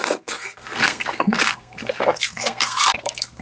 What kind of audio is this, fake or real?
fake